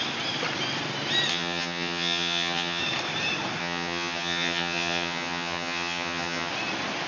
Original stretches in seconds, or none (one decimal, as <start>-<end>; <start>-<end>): 0.0-1.3; 2.8-3.6; 6.5-7.1